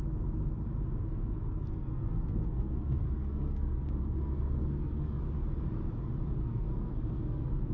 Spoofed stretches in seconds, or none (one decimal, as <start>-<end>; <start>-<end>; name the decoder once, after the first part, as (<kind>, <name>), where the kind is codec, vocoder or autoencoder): 1.0-5.2 (codec, SNAC); 6.4-7.7